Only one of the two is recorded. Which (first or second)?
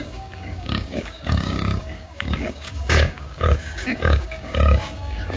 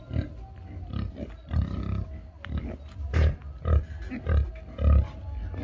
second